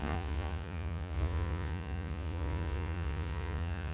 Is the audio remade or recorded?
remade